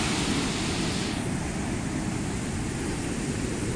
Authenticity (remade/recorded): recorded